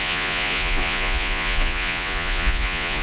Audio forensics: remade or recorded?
remade